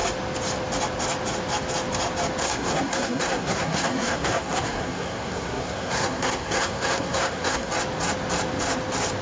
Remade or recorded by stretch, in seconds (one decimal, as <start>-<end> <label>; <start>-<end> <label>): 0.0-2.4 recorded; 2.4-7.7 remade; 7.7-9.2 recorded